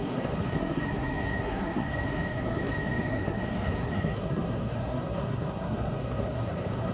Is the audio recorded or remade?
remade